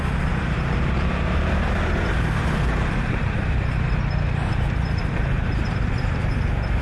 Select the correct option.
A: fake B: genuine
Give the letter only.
A